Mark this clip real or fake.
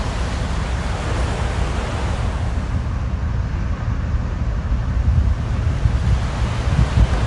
real